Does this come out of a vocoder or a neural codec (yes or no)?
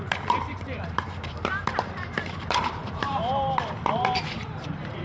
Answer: yes